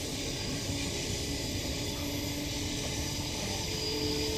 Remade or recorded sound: recorded